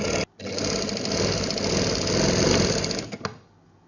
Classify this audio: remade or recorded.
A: recorded